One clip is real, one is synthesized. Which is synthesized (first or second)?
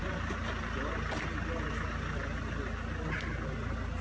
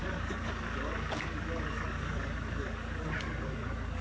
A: second